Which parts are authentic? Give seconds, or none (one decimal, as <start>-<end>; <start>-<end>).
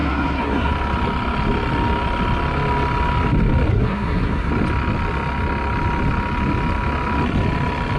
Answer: 0.7-3.7; 4.5-8.0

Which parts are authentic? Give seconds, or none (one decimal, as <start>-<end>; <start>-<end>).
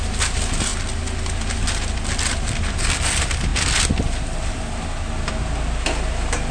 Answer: 0.0-6.5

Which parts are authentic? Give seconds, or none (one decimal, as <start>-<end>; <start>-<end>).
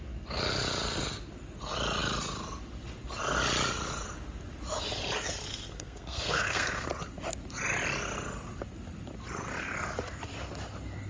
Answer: 0.0-5.5; 6.9-11.1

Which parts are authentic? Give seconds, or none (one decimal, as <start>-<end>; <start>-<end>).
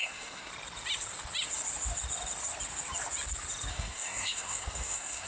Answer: 0.5-3.7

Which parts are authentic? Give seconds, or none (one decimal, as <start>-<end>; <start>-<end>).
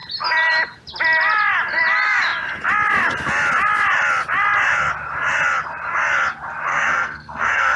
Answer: 0.0-6.7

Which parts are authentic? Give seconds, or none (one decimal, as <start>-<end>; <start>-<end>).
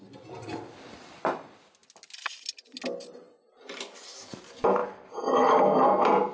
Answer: 0.0-6.3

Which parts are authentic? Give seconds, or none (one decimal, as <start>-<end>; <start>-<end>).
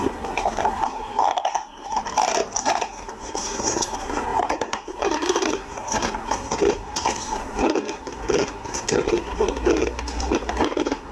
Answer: 2.0-2.6